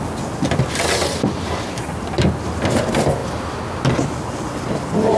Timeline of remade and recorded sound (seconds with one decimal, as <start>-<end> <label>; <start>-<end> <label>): 0.0-5.2 recorded